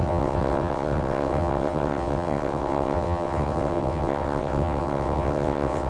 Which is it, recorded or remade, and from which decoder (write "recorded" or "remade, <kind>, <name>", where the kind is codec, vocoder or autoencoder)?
remade, vocoder, WaveNeXt